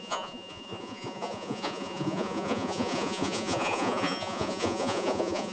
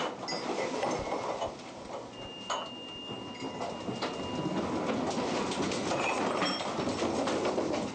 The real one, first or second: second